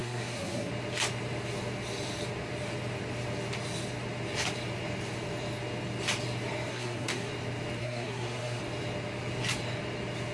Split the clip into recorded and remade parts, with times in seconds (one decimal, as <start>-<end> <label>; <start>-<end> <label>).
0.0-0.7 remade; 0.7-6.7 recorded; 6.7-7.3 remade; 7.3-7.8 recorded; 7.8-8.6 remade; 8.6-10.3 recorded